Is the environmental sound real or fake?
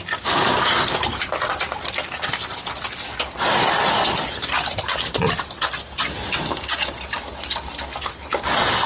real